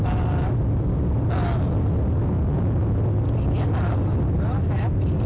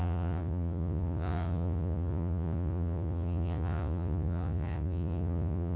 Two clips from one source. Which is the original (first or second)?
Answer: first